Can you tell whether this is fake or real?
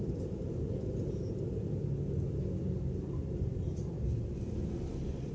fake